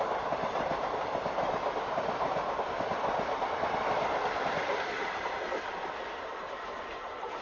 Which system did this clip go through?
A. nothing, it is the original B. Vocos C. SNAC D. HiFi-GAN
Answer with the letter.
A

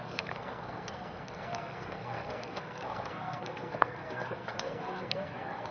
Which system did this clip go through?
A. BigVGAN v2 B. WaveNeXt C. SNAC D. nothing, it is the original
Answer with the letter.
C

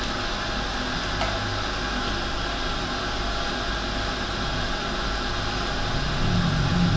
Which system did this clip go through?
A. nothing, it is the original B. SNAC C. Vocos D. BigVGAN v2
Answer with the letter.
A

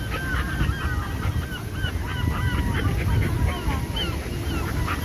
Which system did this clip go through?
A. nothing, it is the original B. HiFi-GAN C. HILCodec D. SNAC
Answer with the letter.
A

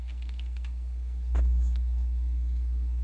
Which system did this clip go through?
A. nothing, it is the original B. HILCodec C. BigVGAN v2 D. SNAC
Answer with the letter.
D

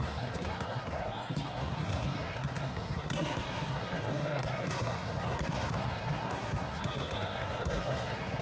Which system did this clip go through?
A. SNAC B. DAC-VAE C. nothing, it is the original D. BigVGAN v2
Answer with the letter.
A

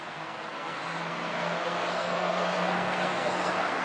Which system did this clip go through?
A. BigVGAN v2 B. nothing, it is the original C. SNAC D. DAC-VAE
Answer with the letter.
C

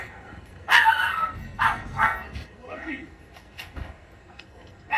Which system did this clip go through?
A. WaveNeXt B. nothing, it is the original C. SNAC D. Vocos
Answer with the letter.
C